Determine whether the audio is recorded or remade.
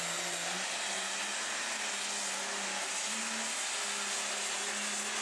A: recorded